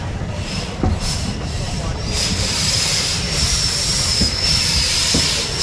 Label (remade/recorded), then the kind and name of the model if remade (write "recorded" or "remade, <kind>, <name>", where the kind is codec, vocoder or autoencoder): remade, vocoder, BigVGAN v2